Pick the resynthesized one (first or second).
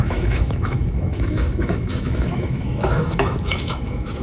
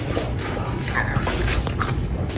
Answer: first